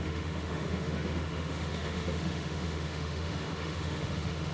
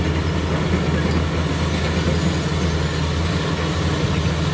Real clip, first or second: second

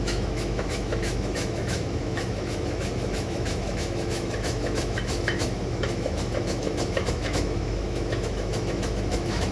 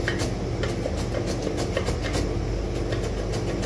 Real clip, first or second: second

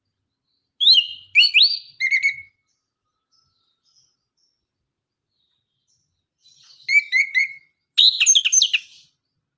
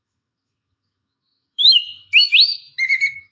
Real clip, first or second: first